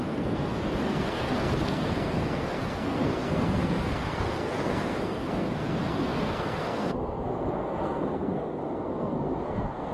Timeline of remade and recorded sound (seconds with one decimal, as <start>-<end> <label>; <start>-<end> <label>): 0.0-9.9 remade